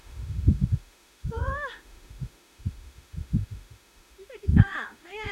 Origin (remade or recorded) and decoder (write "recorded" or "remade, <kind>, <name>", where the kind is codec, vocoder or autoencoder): remade, autoencoder, DAC-VAE